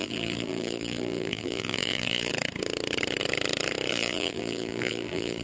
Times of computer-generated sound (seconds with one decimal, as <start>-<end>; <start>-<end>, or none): 0.0-2.3; 3.9-5.4